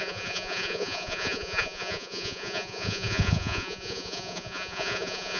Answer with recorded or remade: remade